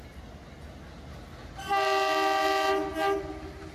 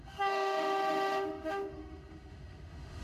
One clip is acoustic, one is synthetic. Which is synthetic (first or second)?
second